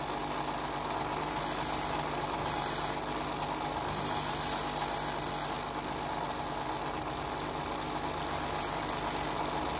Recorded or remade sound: recorded